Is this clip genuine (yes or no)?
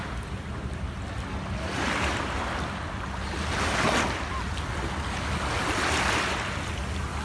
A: yes